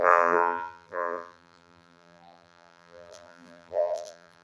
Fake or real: fake